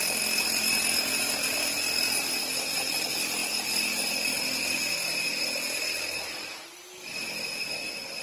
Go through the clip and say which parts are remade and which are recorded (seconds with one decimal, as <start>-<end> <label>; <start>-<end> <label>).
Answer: 0.0-8.2 recorded